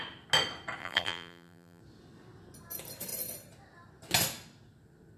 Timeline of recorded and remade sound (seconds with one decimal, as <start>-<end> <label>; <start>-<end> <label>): 0.0-0.8 recorded; 0.8-1.8 remade; 1.8-5.2 recorded